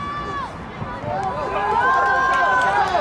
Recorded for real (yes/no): yes